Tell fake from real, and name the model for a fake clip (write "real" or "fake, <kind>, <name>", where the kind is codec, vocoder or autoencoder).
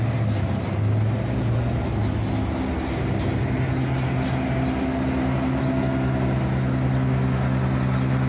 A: real